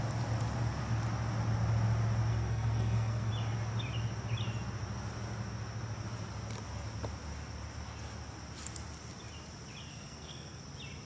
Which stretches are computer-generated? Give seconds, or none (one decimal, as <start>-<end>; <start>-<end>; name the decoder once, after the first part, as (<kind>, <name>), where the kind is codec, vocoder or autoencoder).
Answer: 2.3-3.3 (codec, SNAC); 9.9-10.6